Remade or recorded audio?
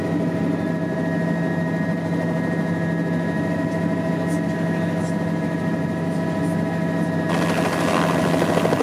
recorded